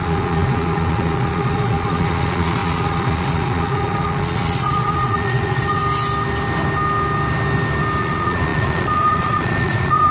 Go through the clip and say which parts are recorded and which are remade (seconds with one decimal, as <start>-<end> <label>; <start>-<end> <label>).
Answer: 0.0-5.8 remade; 5.8-8.0 recorded; 8.0-10.1 remade